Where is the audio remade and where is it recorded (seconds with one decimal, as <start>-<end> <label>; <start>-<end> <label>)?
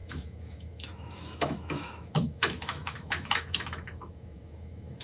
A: 0.0-5.0 remade